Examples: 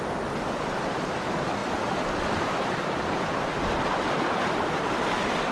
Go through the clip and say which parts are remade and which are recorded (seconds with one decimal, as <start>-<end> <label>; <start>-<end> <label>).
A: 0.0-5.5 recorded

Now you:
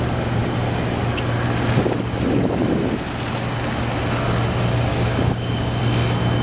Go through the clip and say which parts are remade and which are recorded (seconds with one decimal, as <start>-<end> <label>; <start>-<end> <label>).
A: 0.0-4.9 recorded; 4.9-5.8 remade; 5.8-6.4 recorded

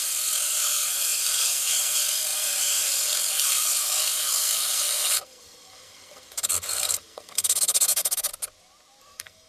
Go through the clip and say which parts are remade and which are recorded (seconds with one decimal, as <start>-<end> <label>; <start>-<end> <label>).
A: 0.0-8.3 remade; 8.3-9.0 recorded; 9.0-9.5 remade

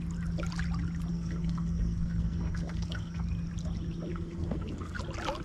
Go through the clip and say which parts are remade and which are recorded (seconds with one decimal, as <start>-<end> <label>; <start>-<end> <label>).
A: 0.0-1.1 recorded; 1.1-3.2 remade; 3.2-4.1 recorded; 4.1-5.0 remade; 5.0-5.4 recorded

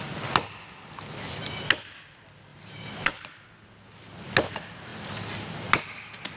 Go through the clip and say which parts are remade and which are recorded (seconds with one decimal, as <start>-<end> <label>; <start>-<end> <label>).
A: 0.0-2.5 recorded; 2.5-3.3 remade; 3.3-6.4 recorded

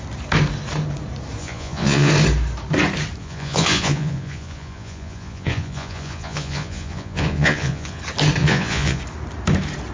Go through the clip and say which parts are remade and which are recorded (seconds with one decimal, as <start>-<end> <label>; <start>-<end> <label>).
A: 0.0-1.4 recorded; 1.4-2.1 remade; 2.1-3.2 recorded; 3.2-8.0 remade; 8.0-8.4 recorded; 8.4-9.0 remade; 9.0-9.9 recorded

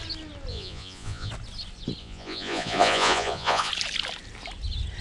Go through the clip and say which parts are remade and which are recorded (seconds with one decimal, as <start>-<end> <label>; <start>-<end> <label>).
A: 0.0-0.5 recorded; 0.5-1.3 remade; 1.3-2.0 recorded; 2.0-3.7 remade; 3.7-5.0 recorded